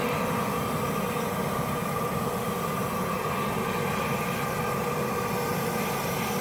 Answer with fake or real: real